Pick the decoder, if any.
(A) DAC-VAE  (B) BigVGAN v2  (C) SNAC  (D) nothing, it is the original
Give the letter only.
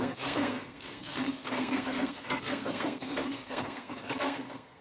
C